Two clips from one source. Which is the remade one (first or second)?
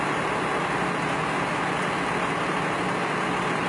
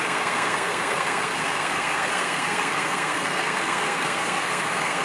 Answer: second